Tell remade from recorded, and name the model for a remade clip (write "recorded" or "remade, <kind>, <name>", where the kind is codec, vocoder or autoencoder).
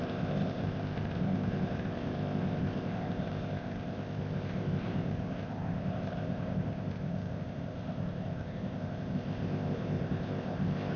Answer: remade, codec, ZipCodec